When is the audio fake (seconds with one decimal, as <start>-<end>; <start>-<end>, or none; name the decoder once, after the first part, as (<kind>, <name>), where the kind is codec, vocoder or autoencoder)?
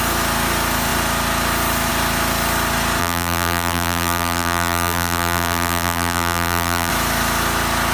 3.0-6.9 (vocoder, BigVGAN v2)